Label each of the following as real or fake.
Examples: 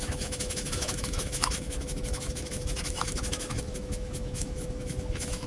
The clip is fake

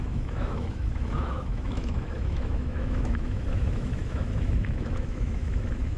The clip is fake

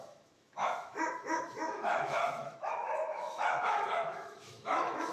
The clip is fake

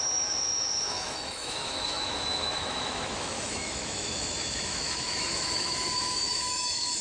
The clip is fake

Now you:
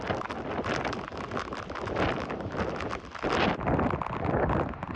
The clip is real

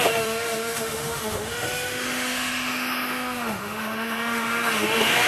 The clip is fake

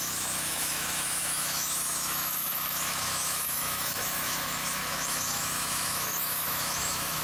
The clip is fake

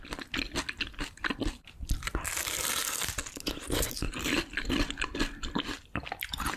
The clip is real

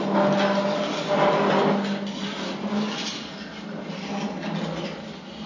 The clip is real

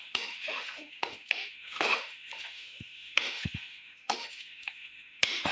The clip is fake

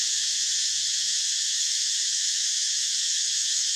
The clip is fake